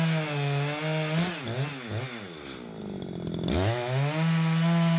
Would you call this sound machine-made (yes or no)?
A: no